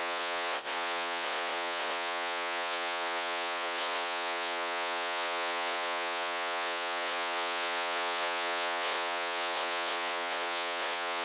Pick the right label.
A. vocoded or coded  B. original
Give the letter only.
A